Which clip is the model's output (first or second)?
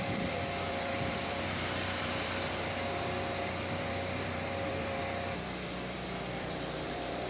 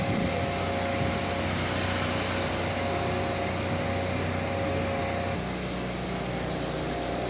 first